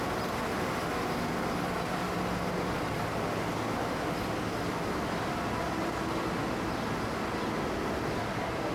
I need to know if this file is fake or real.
real